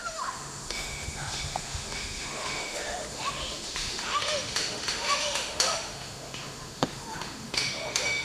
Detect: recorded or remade remade